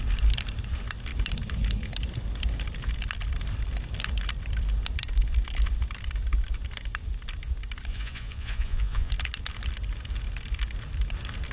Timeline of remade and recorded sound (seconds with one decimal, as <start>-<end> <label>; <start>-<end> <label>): 0.0-7.9 recorded; 7.9-9.1 remade; 9.1-11.5 recorded